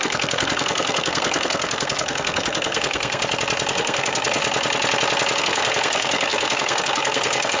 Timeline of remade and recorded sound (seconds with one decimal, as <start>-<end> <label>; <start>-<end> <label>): 0.0-3.2 remade; 3.2-3.7 recorded; 3.7-4.4 remade; 4.4-5.4 recorded; 5.4-7.6 remade